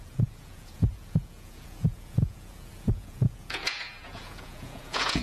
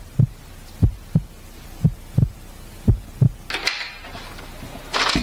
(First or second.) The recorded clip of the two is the second